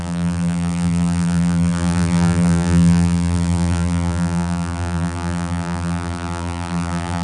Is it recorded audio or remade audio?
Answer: remade